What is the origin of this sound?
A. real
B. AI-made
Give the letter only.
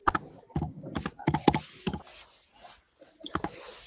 A